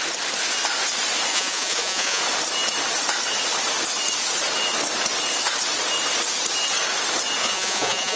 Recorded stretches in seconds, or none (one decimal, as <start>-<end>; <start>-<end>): 0.0-1.3; 2.2-7.4